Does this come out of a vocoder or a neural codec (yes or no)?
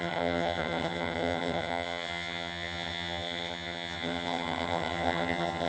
yes